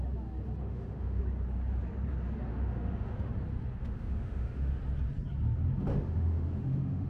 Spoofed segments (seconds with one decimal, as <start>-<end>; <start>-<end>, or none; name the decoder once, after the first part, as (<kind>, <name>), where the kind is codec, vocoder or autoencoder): 0.6-1.2 (autoencoder, DAC-VAE); 2.5-3.3; 3.8-4.8; 5.9-7.1